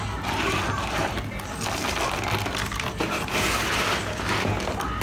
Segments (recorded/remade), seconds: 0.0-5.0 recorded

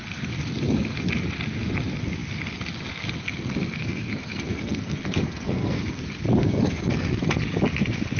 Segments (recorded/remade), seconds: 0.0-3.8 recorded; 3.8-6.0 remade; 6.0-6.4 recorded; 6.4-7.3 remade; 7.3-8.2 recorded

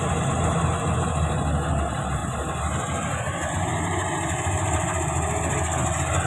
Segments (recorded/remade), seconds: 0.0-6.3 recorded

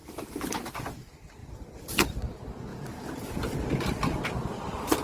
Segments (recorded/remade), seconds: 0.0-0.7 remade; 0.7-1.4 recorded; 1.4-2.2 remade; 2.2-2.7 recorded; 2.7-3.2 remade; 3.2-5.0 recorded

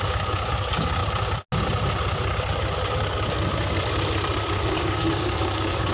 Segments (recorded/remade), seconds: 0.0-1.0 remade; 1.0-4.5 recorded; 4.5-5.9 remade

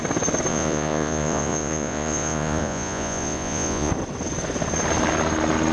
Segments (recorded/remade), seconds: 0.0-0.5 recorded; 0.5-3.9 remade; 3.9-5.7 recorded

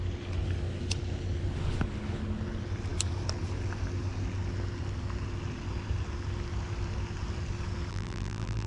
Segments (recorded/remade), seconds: 0.0-7.9 recorded; 7.9-8.7 remade

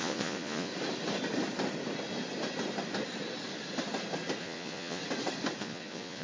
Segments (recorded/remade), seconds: 0.0-0.7 remade; 0.7-4.4 recorded; 4.4-5.0 remade; 5.0-5.6 recorded; 5.6-6.2 remade